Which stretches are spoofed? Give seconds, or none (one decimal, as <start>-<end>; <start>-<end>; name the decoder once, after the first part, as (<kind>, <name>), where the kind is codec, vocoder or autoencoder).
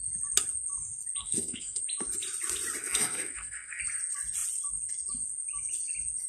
1.2-1.8 (codec, SNAC); 2.8-3.8